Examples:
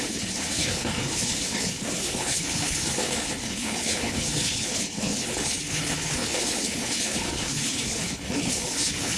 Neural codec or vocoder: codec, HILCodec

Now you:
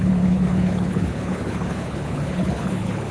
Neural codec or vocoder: codec, HILCodec